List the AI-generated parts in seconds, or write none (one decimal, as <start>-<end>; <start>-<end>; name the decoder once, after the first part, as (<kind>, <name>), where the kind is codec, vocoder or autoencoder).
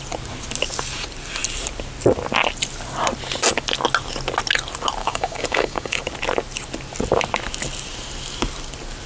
5.0-6.0 (codec, DAC)